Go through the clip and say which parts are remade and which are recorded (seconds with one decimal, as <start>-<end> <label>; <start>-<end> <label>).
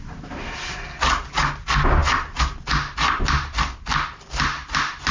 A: 0.0-5.1 recorded